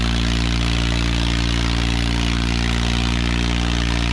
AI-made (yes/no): no